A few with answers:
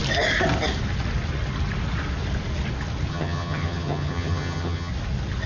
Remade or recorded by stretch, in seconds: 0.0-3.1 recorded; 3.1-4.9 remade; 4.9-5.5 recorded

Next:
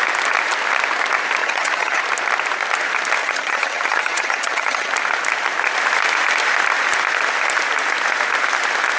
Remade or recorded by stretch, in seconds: 0.0-1.4 recorded; 1.4-2.0 remade; 2.0-3.2 recorded; 3.2-4.9 remade; 4.9-9.0 recorded

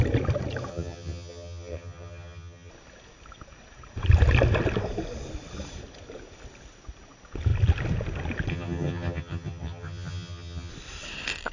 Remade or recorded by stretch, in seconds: 0.0-0.7 recorded; 0.7-2.7 remade; 2.7-8.5 recorded; 8.5-10.7 remade; 10.7-11.5 recorded

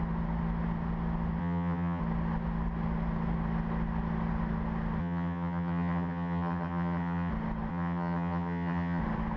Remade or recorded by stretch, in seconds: 0.0-1.4 recorded; 1.4-2.0 remade; 2.0-5.0 recorded; 5.0-7.3 remade; 7.3-7.7 recorded; 7.7-9.0 remade; 9.0-9.4 recorded

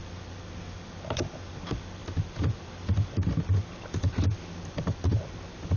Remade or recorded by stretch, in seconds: 0.0-5.8 recorded